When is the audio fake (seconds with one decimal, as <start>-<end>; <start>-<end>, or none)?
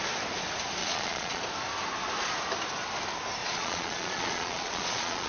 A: 0.8-1.4; 3.4-5.3